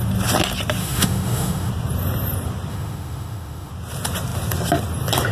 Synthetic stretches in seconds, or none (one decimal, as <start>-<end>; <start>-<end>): 0.8-1.7; 2.7-3.7